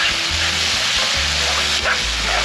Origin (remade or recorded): recorded